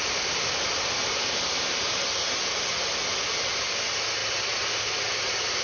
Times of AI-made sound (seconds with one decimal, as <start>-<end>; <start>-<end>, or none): none